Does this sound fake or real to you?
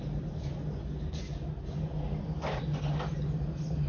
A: real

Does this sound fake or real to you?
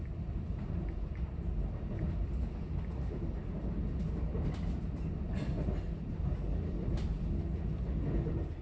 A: real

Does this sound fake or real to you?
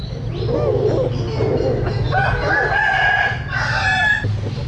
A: real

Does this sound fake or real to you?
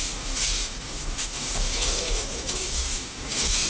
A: fake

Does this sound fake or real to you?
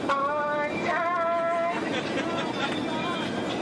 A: real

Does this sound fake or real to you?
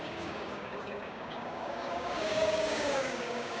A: fake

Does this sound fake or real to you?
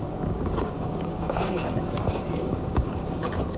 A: fake